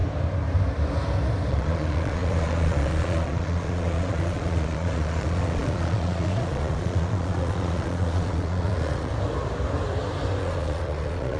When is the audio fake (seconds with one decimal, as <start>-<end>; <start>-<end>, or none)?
1.5-9.1; 10.4-11.4